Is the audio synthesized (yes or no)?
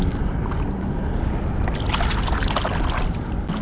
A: no